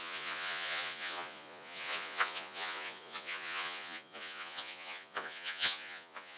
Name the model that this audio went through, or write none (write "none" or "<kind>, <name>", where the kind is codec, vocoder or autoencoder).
vocoder, Vocos